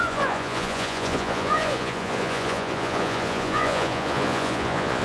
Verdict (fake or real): fake